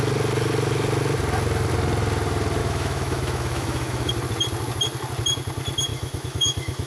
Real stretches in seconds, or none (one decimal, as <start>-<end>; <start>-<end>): 0.0-2.6; 4.1-5.9